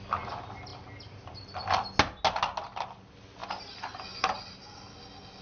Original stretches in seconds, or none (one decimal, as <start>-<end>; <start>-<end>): 0.0-5.4